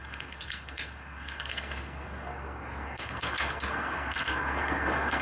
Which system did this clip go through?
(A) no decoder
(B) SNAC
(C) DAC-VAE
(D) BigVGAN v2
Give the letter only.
B